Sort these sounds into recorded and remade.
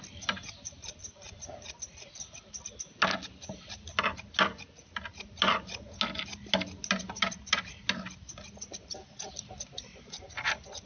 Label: recorded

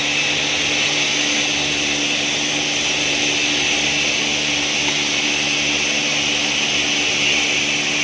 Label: recorded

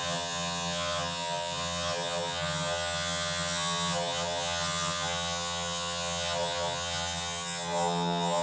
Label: remade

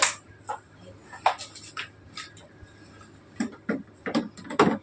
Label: recorded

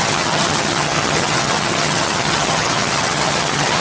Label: remade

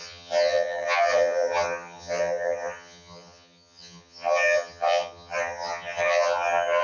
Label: remade